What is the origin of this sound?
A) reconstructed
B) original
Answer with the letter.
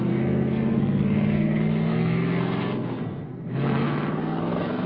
A